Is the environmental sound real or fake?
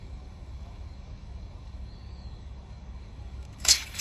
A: fake